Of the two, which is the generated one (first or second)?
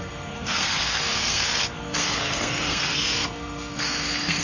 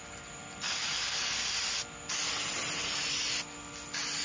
first